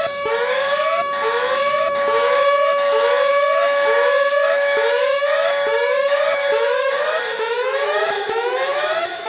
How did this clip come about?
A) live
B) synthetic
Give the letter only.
B